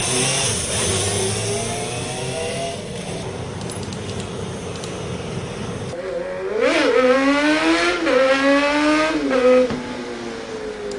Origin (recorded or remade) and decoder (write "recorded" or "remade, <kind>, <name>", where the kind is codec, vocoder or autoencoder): recorded